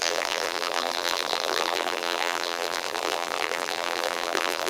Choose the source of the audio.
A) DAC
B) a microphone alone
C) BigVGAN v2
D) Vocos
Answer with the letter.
C